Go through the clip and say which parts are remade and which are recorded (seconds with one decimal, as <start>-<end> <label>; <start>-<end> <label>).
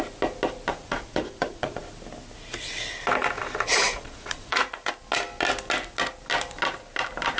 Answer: 0.0-0.7 recorded; 0.7-1.8 remade; 1.8-3.7 recorded; 3.7-4.9 remade; 4.9-7.4 recorded